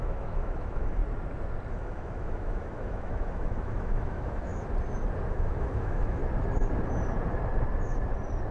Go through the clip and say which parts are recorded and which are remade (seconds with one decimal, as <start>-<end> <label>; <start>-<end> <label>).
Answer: 0.0-1.0 remade; 1.0-1.7 recorded; 1.7-4.5 remade; 4.5-5.3 recorded; 5.3-6.2 remade; 6.2-8.5 recorded